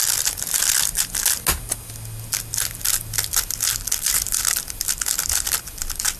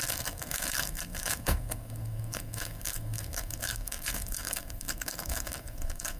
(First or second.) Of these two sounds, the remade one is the second